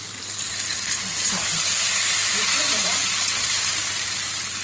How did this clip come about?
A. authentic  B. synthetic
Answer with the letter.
B